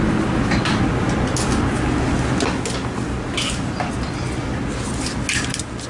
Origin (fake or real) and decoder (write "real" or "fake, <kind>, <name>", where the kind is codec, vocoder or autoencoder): real